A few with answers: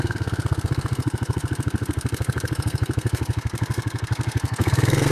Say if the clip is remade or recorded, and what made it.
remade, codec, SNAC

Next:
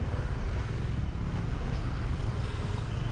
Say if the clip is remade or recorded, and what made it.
remade, codec, SNAC